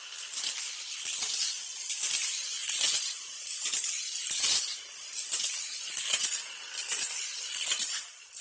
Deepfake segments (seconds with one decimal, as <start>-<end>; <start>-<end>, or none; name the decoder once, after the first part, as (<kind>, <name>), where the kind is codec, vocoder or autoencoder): none